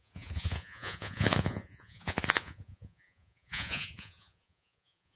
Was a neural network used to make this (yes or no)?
yes